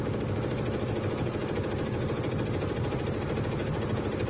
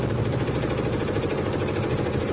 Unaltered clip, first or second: first